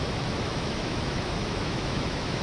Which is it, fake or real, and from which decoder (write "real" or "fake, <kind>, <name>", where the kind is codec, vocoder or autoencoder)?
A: fake, autoencoder, DAC-VAE